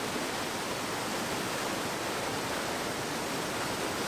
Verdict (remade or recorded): recorded